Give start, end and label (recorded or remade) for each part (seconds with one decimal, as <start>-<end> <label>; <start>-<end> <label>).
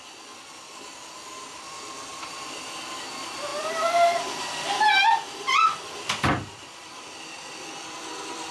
0.0-2.1 recorded; 2.1-2.7 remade; 2.7-3.5 recorded; 3.5-7.0 remade; 7.0-8.5 recorded